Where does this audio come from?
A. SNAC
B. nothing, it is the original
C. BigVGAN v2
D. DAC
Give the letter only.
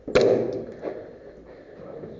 B